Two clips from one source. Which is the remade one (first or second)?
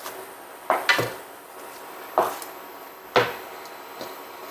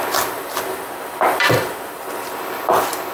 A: second